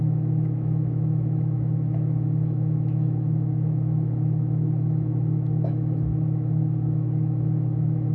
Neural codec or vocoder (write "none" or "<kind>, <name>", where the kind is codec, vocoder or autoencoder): autoencoder, DAC-VAE